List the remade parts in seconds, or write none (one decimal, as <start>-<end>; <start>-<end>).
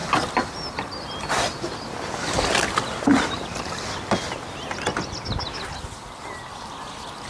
none